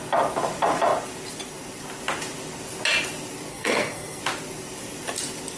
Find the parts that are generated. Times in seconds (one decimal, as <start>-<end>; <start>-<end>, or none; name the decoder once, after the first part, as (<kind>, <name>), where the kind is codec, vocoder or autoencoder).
3.5-4.2 (codec, SNAC)